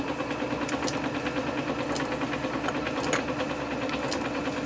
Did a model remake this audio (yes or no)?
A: no